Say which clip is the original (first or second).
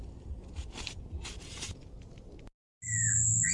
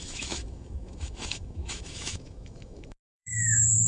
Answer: first